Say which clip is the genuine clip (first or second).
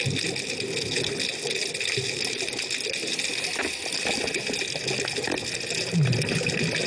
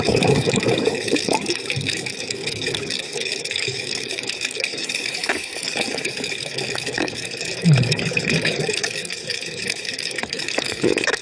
first